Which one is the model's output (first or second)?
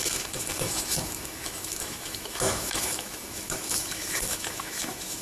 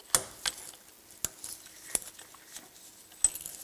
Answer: first